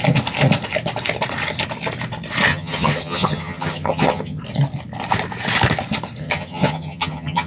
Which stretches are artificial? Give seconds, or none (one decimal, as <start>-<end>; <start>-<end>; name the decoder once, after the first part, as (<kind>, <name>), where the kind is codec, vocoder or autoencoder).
2.5-4.4 (vocoder, HiFi-GAN); 6.2-7.5